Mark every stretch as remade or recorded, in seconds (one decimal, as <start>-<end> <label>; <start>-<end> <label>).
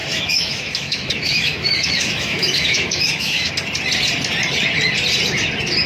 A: 0.0-3.5 remade; 3.5-5.9 recorded